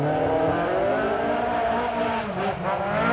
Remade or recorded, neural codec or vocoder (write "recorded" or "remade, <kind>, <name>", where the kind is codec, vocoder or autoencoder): recorded